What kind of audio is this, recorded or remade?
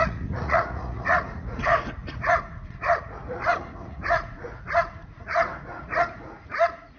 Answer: remade